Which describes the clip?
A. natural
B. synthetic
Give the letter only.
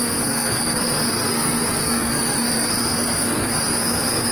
B